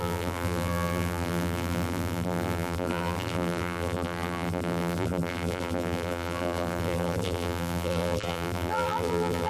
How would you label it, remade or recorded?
remade